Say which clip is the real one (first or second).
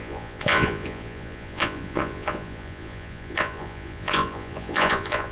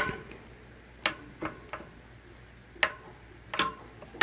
second